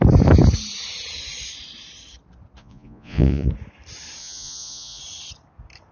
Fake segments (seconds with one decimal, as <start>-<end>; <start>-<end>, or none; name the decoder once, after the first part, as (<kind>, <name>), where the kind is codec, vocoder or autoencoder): 2.6-3.5 (vocoder, Vocos); 4.2-5.0